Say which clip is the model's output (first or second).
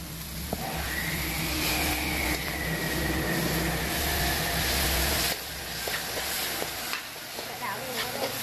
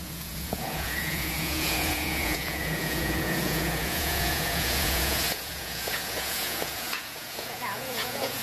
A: second